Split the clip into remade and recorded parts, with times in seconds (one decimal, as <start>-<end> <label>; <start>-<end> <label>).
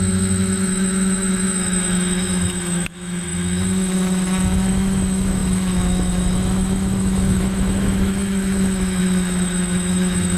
0.0-10.4 remade